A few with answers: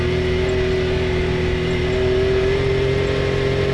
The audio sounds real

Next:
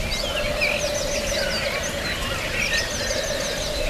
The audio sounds real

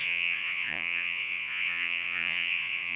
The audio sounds fake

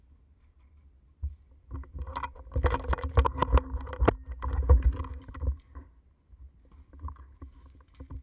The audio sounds real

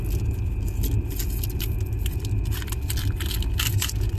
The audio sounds real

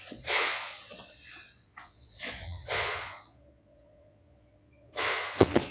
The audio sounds fake